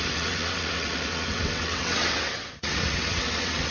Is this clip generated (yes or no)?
yes